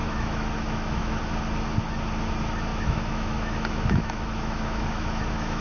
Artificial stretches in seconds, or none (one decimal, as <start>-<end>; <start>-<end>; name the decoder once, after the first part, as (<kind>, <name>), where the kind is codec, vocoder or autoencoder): 0.0-1.2 (autoencoder, DAC-VAE); 2.7-5.6